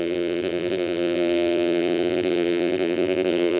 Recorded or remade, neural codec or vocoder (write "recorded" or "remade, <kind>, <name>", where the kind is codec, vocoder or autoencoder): remade, vocoder, BigVGAN v2